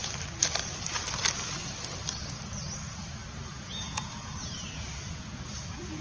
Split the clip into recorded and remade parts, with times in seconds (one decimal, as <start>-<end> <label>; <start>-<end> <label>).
0.0-3.5 recorded; 3.5-6.0 remade